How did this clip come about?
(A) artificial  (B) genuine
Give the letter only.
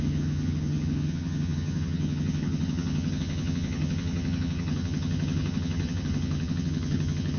A